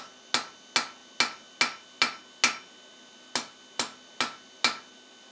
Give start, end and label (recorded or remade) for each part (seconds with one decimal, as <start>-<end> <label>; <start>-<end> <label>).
0.0-5.3 recorded